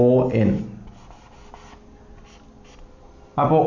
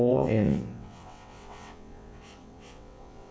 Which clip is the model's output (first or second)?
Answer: second